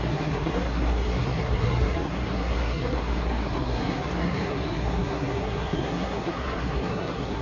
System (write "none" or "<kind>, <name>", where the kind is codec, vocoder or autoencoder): codec, SNAC